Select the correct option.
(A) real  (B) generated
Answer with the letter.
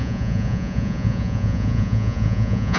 B